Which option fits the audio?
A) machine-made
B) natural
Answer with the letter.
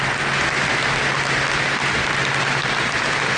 B